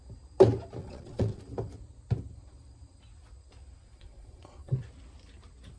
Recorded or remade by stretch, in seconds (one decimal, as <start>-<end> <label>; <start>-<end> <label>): 0.0-0.8 recorded; 0.8-1.4 remade; 1.4-3.9 recorded; 3.9-4.8 remade; 4.8-5.8 recorded